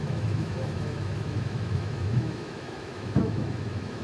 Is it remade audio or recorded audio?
remade